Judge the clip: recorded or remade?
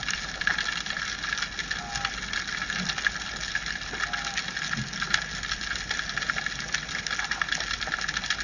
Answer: recorded